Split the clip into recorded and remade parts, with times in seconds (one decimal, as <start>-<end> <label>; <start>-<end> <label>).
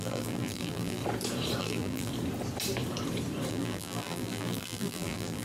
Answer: 0.0-1.0 remade; 1.0-1.6 recorded; 1.6-2.1 remade; 2.1-3.5 recorded; 3.5-5.4 remade